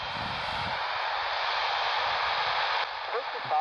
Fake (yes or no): no